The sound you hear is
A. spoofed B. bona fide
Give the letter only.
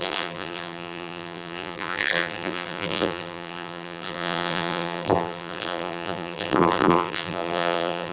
A